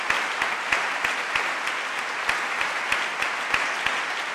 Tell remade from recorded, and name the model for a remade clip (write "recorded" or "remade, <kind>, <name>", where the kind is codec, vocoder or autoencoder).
recorded